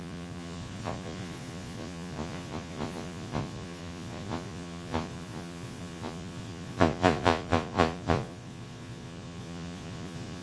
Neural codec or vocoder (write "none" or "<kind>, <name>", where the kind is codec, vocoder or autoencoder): vocoder, Vocos